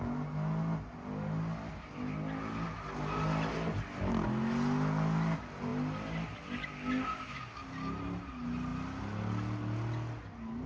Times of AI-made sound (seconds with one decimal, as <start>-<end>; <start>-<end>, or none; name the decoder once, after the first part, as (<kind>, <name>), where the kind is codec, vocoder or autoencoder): none